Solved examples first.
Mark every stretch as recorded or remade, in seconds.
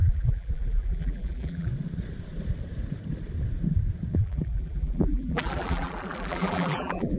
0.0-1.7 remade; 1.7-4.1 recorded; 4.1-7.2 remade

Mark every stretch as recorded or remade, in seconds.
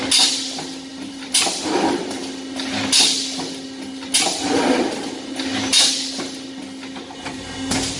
0.0-0.9 recorded; 0.9-1.6 remade; 1.6-8.0 recorded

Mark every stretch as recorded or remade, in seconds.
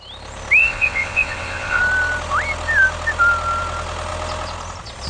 0.0-0.6 recorded; 0.6-1.8 remade; 1.8-5.1 recorded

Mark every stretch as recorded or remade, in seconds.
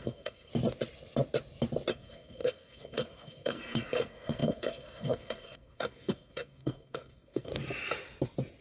0.0-0.5 remade; 0.5-1.9 recorded; 1.9-7.5 remade; 7.5-8.6 recorded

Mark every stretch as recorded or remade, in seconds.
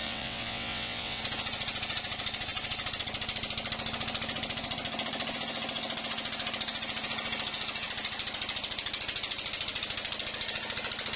0.0-1.2 remade; 1.2-11.2 recorded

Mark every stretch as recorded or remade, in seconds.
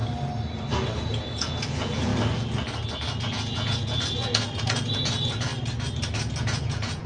0.0-1.0 recorded; 1.0-2.1 remade; 2.1-3.2 recorded; 3.2-5.5 remade; 5.5-6.3 recorded; 6.3-7.1 remade